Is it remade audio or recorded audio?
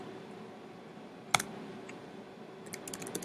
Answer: recorded